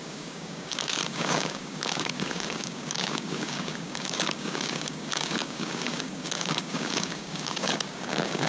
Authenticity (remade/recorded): remade